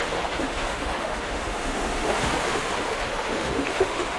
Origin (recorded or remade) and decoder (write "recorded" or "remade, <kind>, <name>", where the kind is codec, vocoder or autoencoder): remade, autoencoder, DAC-VAE